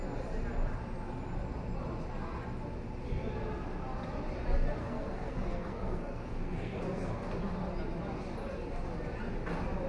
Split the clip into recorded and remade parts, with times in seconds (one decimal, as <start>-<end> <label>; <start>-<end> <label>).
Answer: 0.0-4.8 recorded; 4.8-7.3 remade; 7.3-9.9 recorded